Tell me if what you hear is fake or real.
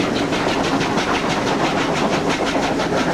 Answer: real